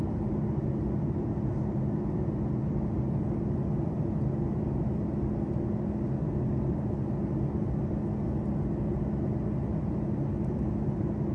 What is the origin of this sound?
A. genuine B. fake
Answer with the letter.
A